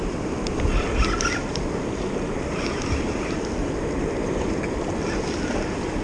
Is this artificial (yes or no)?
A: no